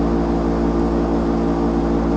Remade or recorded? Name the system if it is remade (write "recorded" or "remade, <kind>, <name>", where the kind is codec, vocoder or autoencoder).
recorded